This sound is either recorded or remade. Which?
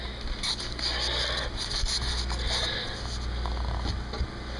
recorded